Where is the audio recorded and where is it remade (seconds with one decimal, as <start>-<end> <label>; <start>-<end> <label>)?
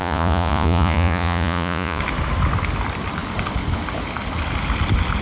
0.0-2.0 remade; 2.0-5.2 recorded